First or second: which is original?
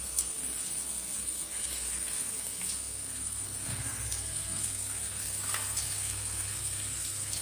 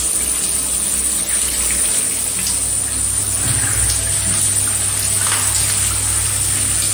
second